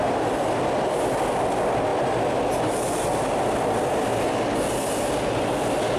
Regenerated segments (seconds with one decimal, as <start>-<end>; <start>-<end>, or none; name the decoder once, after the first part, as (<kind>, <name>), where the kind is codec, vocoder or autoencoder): none